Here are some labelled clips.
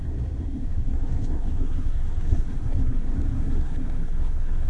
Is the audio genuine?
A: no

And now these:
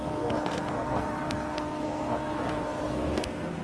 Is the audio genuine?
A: no